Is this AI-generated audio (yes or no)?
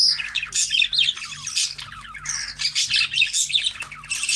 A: no